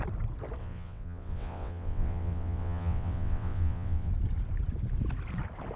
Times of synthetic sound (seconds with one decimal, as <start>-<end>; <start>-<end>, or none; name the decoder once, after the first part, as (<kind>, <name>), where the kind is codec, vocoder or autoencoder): 0.6-4.1 (vocoder, WaveNeXt)